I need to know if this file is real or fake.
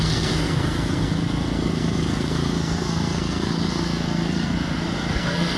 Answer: fake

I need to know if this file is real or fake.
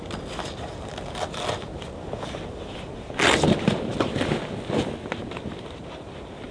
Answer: real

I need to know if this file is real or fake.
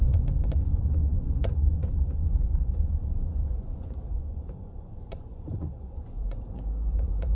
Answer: fake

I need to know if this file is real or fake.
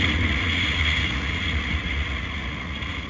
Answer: fake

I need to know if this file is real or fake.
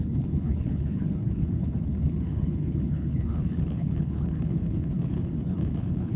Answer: fake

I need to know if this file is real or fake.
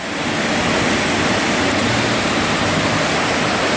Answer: real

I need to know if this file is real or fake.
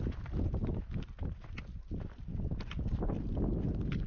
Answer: real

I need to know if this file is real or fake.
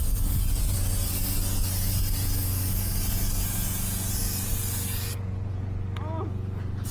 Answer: fake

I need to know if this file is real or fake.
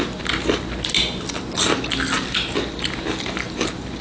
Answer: real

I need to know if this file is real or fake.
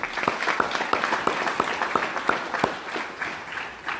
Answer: real